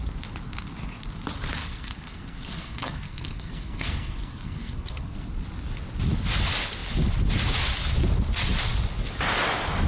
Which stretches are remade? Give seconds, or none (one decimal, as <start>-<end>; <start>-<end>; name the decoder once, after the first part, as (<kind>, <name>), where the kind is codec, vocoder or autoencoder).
1.6-5.3 (codec, SNAC)